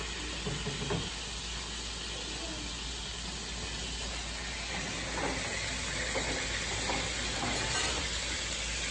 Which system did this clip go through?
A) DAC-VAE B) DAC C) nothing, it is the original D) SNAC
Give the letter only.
C